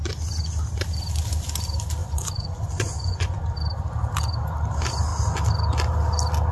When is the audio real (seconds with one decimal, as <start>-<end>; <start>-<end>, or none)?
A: 0.0-2.0; 3.4-6.5